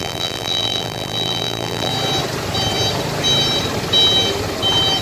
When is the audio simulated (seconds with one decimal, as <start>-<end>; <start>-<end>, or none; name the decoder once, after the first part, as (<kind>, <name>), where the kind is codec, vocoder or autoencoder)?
0.0-1.9 (vocoder, BigVGAN v2)